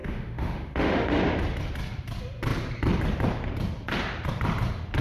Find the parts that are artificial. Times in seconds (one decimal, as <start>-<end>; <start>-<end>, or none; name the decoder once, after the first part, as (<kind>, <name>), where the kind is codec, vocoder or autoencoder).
0.0-1.2 (autoencoder, DAC-VAE)